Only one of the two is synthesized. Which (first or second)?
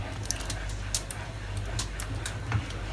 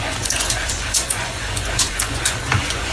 second